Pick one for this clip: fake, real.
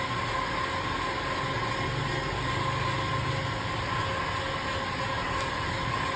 real